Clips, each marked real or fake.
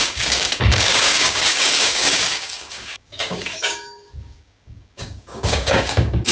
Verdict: fake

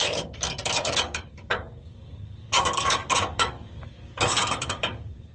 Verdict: fake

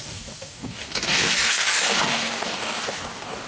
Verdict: fake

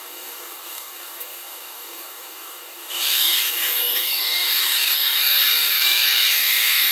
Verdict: fake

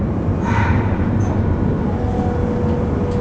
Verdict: real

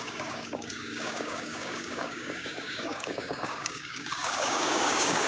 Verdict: fake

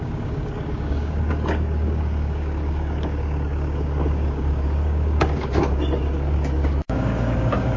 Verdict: fake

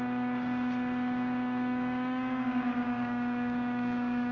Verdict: fake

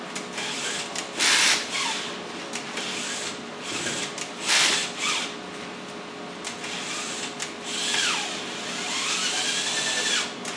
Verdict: real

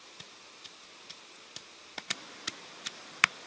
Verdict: real